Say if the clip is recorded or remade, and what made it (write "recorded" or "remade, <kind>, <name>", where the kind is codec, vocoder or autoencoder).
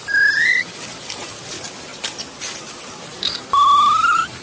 remade, vocoder, BigVGAN v2